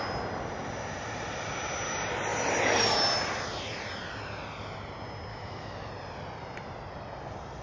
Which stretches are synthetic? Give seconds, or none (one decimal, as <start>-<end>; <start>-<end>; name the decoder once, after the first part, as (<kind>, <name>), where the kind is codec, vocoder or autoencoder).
5.3-5.9 (autoencoder, DAC-VAE)